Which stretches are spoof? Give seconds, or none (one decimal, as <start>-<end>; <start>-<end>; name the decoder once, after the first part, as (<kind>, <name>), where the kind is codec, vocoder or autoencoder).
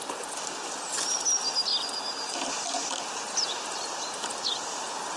none